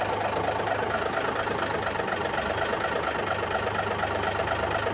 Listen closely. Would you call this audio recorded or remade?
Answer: recorded